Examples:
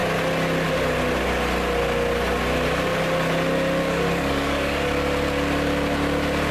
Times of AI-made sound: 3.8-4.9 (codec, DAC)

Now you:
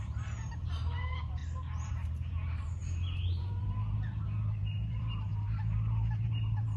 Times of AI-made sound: 0.0-1.4 (vocoder, BigVGAN v2); 1.9-2.8; 3.3-6.8

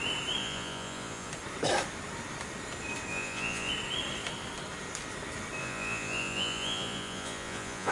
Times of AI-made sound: 0.4-1.3 (vocoder, Vocos); 3.1-3.7; 5.6-7.9

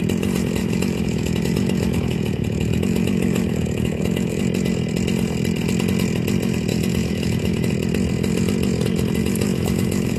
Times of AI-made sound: 0.6-4.4 (autoencoder, DAC-VAE); 6.7-7.7; 9.2-10.2

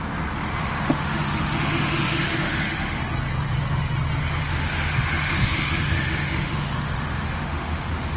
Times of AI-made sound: 0.6-3.0 (autoencoder, DAC-VAE); 4.4-8.2

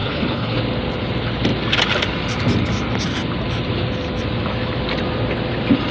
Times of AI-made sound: 0.0-0.6 (codec, HILCodec)

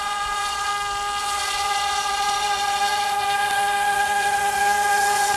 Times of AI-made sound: 0.0-0.7 (vocoder, Vocos); 1.2-5.4

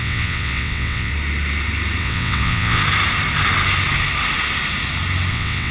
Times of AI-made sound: 0.0-1.1 (vocoder, WaveNeXt); 2.0-2.8; 5.3-5.7